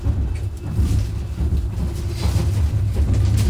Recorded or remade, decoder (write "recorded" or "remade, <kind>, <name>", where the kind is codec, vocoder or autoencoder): recorded